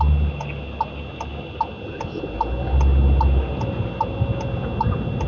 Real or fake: real